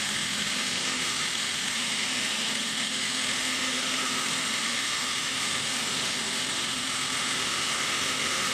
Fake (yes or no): yes